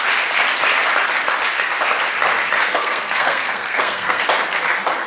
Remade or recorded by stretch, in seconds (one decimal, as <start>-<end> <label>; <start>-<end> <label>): 0.0-2.7 recorded; 2.7-4.2 remade; 4.2-5.1 recorded